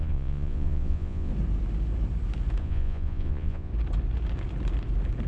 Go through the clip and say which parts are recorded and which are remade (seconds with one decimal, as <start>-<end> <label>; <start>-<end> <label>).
0.0-1.3 remade; 1.3-2.6 recorded; 2.6-3.7 remade; 3.7-5.3 recorded